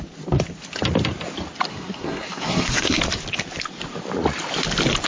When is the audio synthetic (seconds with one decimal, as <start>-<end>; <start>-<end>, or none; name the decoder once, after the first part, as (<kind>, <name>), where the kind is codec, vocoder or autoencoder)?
1.7-3.0 (codec, SNAC)